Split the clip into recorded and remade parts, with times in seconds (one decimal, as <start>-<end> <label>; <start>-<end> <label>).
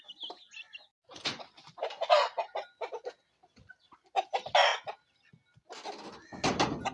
0.0-6.9 recorded